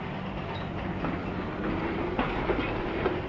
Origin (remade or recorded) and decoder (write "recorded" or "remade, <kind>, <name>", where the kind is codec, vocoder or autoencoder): recorded